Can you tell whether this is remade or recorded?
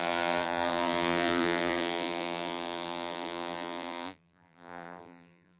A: remade